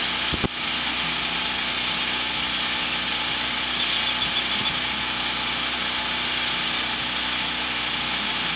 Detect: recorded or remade recorded